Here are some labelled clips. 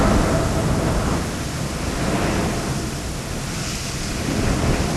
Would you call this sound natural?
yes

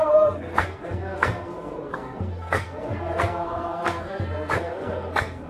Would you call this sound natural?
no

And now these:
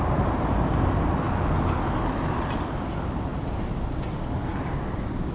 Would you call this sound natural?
yes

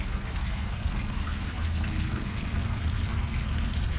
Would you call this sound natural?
no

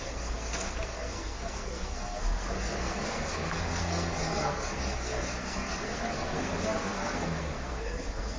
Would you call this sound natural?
no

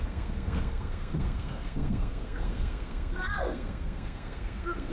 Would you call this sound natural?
no